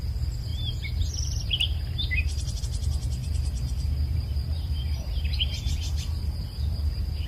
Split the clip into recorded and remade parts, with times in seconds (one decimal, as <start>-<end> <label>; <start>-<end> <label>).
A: 0.0-0.5 recorded; 0.5-2.6 remade; 2.6-3.2 recorded; 3.2-6.4 remade; 6.4-7.3 recorded